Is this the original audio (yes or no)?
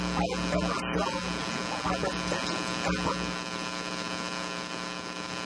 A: yes